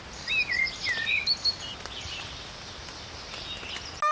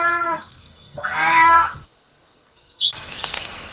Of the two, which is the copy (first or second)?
second